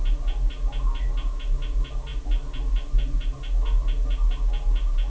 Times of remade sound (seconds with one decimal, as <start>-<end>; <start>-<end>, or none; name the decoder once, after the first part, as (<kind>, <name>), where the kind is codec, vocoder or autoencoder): none